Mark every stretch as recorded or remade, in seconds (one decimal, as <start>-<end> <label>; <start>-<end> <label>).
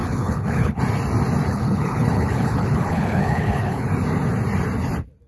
0.0-0.8 remade; 0.8-1.5 recorded; 1.5-3.9 remade; 3.9-5.3 recorded